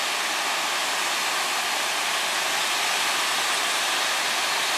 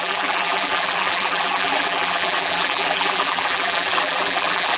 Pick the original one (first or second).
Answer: first